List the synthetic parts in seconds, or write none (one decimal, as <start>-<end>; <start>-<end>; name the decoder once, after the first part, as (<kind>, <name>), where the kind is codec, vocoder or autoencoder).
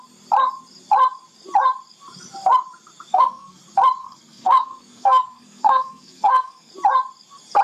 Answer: 3.1-3.6 (codec, SNAC); 4.0-6.7